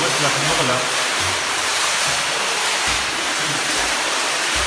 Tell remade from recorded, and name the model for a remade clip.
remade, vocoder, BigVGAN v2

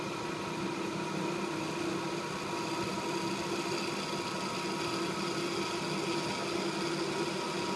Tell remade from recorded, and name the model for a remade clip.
recorded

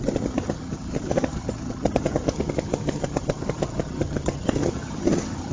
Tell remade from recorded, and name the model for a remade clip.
remade, vocoder, HiFi-GAN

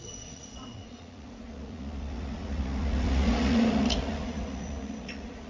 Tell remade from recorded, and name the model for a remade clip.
remade, vocoder, Vocos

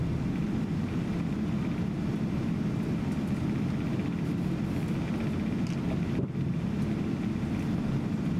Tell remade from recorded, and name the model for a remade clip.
recorded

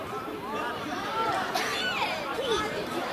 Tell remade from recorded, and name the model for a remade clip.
remade, vocoder, BigVGAN v2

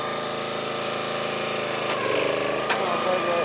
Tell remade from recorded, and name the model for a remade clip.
remade, vocoder, BigVGAN v2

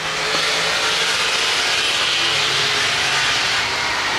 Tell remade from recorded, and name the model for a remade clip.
recorded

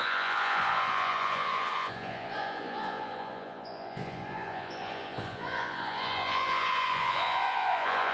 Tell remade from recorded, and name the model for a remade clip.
remade, vocoder, Vocos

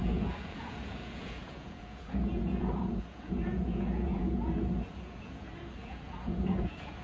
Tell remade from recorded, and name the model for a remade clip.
remade, vocoder, Vocos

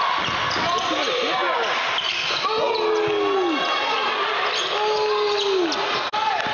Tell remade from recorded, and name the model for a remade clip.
recorded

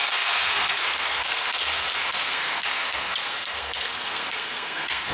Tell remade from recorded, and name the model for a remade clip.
remade, codec, SNAC